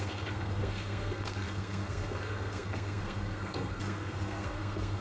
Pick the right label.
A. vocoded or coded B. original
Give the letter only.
A